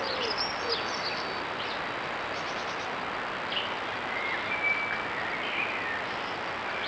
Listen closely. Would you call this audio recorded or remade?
recorded